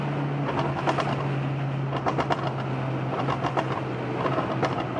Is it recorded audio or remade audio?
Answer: recorded